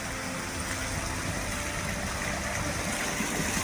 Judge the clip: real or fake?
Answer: real